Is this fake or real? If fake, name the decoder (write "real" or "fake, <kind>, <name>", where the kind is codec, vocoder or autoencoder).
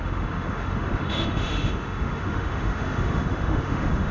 fake, autoencoder, DAC-VAE